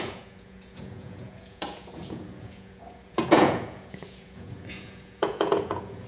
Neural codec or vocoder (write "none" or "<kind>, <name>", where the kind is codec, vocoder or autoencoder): vocoder, Vocos